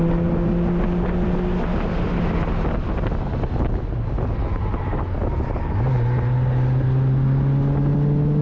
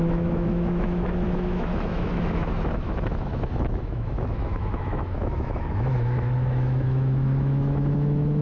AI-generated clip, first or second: second